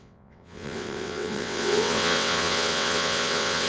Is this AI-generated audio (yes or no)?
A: yes